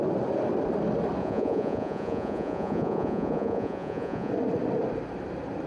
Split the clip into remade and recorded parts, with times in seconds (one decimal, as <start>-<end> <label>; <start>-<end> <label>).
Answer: 0.0-1.2 recorded; 1.2-4.3 remade; 4.3-5.7 recorded